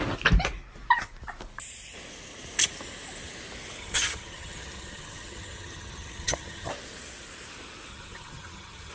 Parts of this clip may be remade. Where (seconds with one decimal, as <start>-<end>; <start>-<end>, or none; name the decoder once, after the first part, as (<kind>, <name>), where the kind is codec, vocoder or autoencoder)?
3.8-6.7 (vocoder, HiFi-GAN); 7.9-8.9